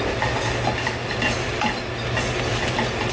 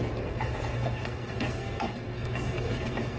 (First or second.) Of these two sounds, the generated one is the second